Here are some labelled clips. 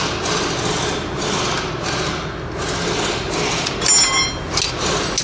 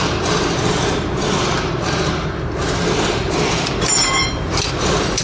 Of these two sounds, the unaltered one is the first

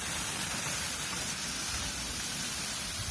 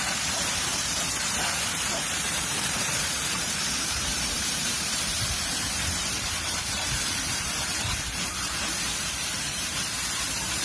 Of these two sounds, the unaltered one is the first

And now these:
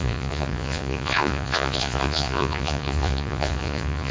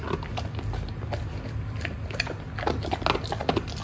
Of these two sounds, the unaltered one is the second